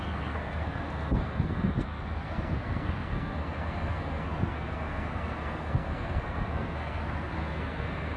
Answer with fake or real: fake